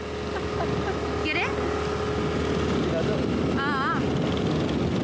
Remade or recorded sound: recorded